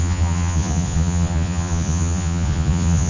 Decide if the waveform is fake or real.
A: fake